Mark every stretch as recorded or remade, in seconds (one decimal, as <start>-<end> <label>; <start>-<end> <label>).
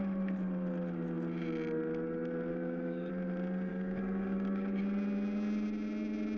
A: 0.0-2.5 recorded; 2.5-3.1 remade; 3.1-3.7 recorded; 3.7-4.8 remade; 4.8-6.4 recorded